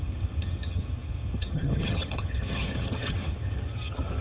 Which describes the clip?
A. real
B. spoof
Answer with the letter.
B